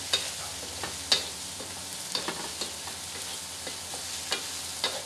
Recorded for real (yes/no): yes